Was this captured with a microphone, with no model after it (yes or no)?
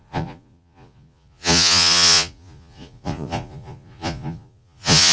no